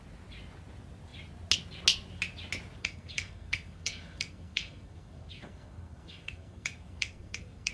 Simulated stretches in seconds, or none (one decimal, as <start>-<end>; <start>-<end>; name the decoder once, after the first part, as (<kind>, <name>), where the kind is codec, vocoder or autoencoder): 2.8-7.7 (codec, SNAC)